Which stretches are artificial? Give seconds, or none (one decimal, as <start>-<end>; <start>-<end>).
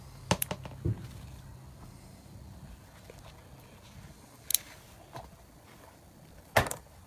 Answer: 4.5-7.1